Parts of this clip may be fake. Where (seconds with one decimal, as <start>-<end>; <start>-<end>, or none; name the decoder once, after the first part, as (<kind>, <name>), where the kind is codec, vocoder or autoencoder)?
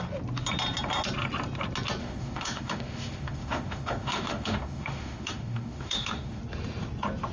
2.0-6.4 (autoencoder, DAC-VAE)